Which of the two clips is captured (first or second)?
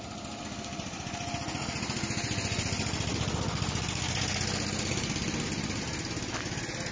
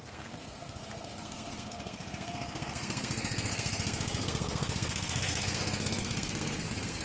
first